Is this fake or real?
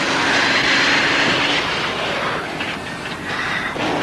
real